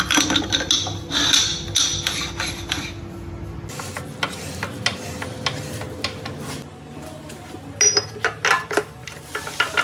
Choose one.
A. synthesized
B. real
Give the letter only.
B